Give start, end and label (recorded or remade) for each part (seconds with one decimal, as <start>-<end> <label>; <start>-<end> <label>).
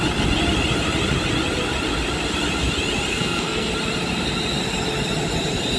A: 0.0-3.1 recorded; 3.1-3.7 remade; 3.7-5.8 recorded